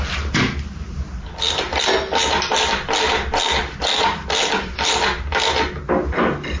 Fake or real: real